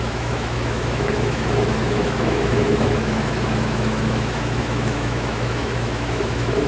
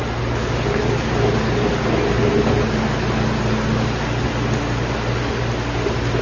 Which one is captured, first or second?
second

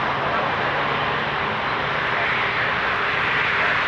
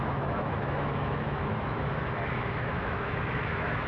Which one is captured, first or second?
first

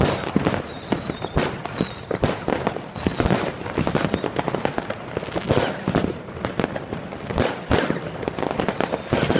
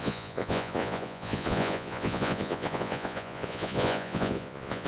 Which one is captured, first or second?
first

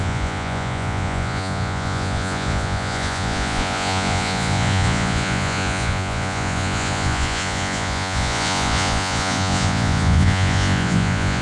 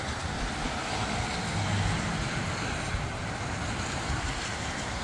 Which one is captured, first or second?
second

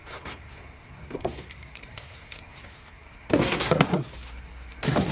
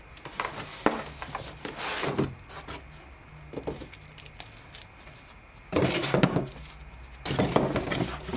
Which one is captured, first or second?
second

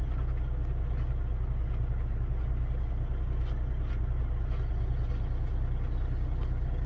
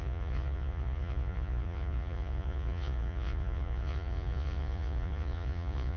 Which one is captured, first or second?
first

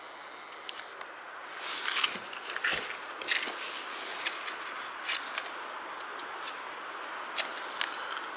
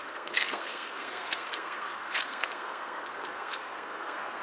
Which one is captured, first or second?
first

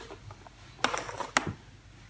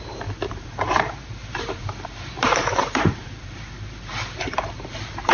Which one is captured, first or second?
first